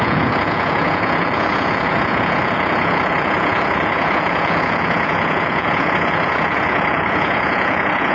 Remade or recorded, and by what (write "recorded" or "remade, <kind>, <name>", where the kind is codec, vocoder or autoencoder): remade, vocoder, Vocos